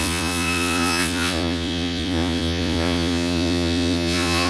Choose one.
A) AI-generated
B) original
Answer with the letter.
A